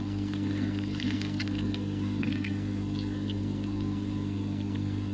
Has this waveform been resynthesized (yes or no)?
yes